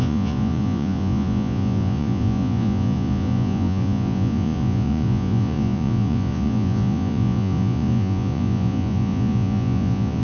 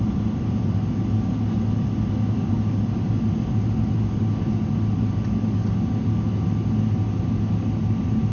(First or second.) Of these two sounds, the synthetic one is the first